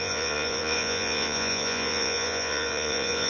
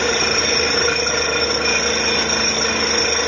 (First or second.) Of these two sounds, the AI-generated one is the first